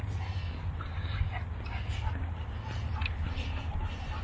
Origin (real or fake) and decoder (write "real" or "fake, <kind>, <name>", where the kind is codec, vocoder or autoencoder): real